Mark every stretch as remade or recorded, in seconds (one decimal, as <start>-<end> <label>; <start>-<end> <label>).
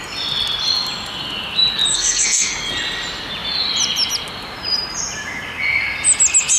0.0-1.9 recorded; 1.9-2.5 remade; 2.5-6.6 recorded